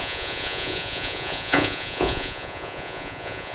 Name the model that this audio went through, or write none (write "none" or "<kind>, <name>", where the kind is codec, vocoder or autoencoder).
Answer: vocoder, Vocos